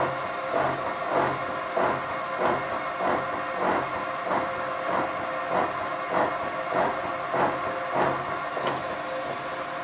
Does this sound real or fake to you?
real